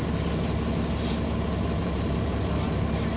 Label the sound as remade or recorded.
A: recorded